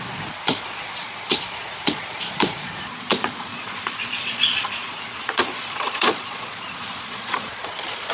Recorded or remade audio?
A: remade